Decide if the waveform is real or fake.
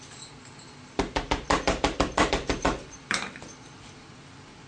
fake